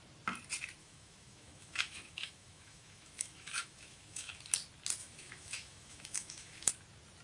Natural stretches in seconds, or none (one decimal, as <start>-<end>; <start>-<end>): 0.0-0.8; 4.4-5.0; 6.7-7.2